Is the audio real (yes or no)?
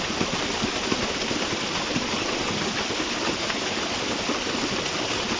yes